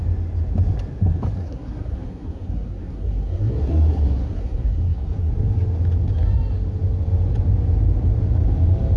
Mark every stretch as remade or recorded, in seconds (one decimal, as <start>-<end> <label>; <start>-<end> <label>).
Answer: 0.0-1.4 recorded; 1.4-5.3 remade; 5.3-9.0 recorded